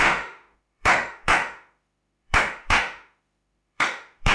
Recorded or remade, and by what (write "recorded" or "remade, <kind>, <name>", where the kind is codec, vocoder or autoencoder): remade, autoencoder, DAC-VAE